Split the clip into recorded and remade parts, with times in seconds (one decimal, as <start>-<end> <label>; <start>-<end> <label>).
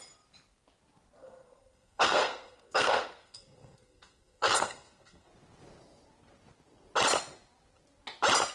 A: 0.0-1.2 recorded; 1.2-5.3 remade; 5.3-8.5 recorded